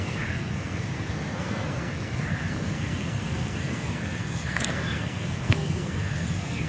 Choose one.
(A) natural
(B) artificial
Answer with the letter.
B